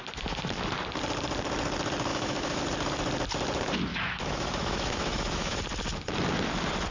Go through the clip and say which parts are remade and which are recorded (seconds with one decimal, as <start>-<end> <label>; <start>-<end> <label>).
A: 0.0-2.1 recorded; 2.1-2.6 remade; 2.6-3.9 recorded; 3.9-5.6 remade; 5.6-6.9 recorded